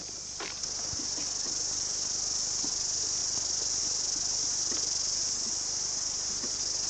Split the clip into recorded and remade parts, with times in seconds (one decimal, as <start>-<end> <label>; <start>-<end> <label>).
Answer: 0.0-6.9 recorded